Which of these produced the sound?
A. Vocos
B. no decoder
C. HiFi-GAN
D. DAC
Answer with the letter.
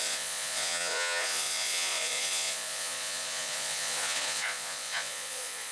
A